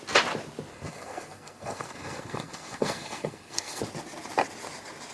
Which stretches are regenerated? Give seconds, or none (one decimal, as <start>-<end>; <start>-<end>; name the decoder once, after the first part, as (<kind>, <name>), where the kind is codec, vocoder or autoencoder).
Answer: 0.7-3.8 (codec, SNAC)